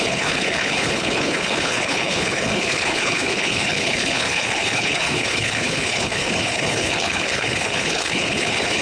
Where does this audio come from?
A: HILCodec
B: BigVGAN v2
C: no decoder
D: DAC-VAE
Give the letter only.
A